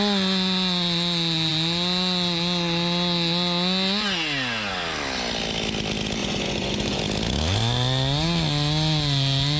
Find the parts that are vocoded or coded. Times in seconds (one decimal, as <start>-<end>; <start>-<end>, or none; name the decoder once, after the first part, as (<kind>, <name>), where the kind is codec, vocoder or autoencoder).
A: 6.2-7.0 (vocoder, Vocos)